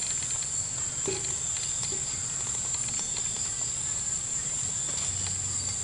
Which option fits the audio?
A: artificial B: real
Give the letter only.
B